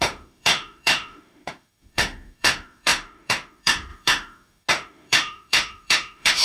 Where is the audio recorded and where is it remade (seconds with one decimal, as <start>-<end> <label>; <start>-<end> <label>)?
0.0-6.4 remade